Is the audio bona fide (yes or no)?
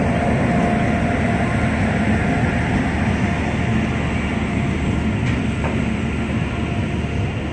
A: yes